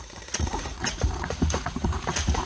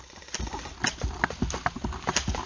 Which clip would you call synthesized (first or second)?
first